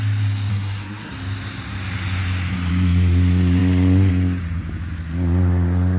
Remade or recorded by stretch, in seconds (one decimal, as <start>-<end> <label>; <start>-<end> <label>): 0.0-0.5 recorded; 0.5-1.1 remade; 1.1-6.0 recorded